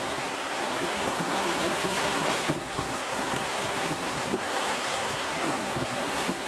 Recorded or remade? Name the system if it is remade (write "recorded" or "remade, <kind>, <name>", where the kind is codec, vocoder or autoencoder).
remade, codec, SNAC